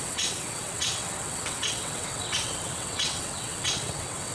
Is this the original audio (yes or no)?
no